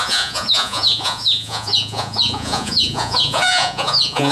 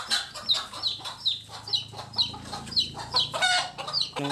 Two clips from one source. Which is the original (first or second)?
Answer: second